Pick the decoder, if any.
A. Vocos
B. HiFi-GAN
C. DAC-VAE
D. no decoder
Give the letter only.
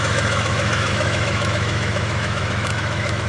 C